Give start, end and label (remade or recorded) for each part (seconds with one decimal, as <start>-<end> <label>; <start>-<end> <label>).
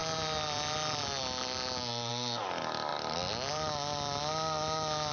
0.0-5.1 recorded